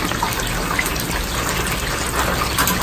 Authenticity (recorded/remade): recorded